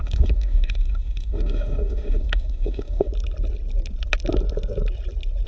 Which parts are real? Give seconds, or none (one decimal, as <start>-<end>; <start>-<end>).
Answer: 3.1-5.5

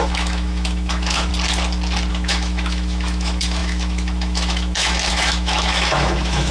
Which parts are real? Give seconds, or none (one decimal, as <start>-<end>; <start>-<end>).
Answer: 1.3-2.1

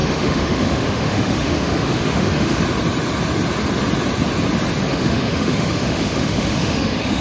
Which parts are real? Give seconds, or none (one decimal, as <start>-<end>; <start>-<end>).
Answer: 2.6-4.9

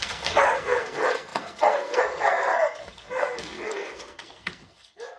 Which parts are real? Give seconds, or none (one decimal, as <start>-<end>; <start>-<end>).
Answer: none

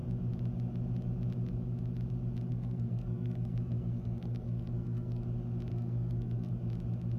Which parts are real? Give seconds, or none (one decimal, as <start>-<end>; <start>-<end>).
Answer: 0.0-2.5; 5.2-5.7; 6.5-7.2

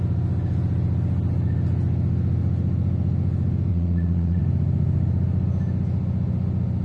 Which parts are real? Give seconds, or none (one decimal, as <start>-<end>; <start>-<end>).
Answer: 0.0-3.7; 4.4-6.8

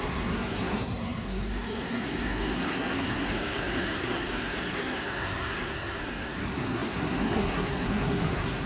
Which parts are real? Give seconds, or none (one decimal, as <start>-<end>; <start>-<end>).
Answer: none